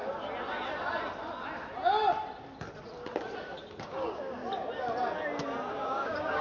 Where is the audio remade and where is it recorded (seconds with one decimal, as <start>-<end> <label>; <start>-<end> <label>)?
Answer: 0.0-3.8 recorded; 3.8-4.4 remade; 4.4-5.7 recorded; 5.7-6.4 remade